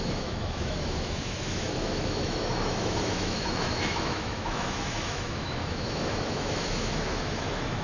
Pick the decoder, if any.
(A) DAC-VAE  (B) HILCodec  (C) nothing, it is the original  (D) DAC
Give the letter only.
A